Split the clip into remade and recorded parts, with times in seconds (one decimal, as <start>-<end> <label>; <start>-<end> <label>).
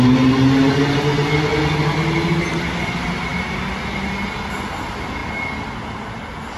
0.0-6.6 recorded